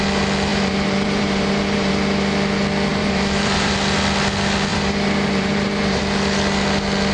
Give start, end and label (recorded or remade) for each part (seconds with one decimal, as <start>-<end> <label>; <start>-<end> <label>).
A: 0.0-0.5 recorded; 0.5-1.9 remade; 1.9-2.9 recorded; 2.9-3.7 remade; 3.7-4.7 recorded; 4.7-6.0 remade; 6.0-7.1 recorded